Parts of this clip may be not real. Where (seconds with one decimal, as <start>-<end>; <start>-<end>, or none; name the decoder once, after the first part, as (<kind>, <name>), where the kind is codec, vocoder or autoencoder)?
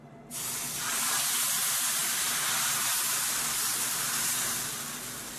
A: none